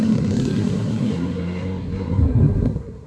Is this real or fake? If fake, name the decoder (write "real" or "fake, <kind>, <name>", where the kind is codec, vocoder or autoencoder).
fake, codec, SNAC